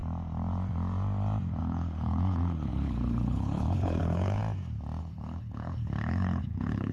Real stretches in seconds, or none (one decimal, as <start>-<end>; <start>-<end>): 0.0-1.6; 4.4-5.0